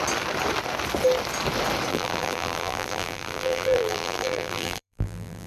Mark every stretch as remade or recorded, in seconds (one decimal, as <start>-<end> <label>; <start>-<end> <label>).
0.0-1.9 recorded; 1.9-5.5 remade